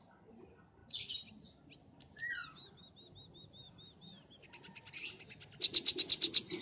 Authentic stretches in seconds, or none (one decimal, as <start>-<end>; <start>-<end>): 0.0-6.6